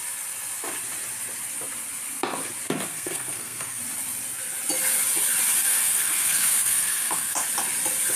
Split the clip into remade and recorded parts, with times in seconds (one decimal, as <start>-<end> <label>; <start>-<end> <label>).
0.0-2.9 recorded; 2.9-3.8 remade; 3.8-5.6 recorded; 5.6-7.4 remade; 7.4-8.2 recorded